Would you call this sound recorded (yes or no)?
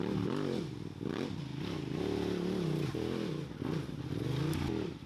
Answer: yes